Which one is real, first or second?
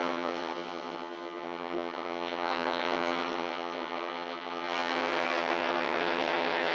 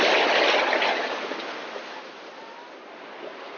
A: second